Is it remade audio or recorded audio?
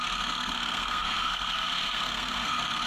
remade